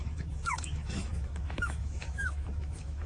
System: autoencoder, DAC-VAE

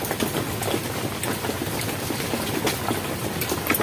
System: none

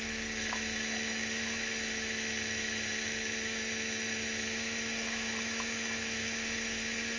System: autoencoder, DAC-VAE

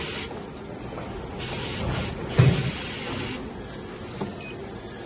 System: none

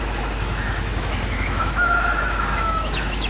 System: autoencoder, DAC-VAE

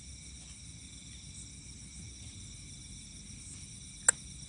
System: none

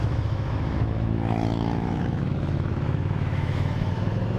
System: autoencoder, DAC-VAE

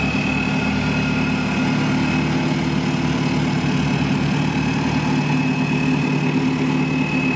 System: none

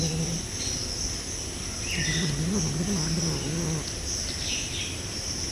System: none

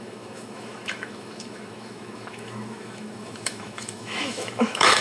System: autoencoder, DAC-VAE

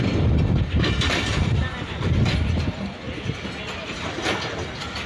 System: none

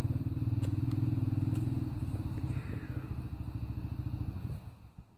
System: none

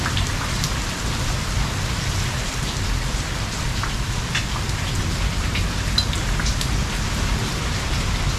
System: none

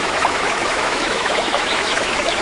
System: autoencoder, DAC-VAE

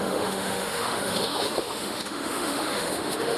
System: autoencoder, DAC-VAE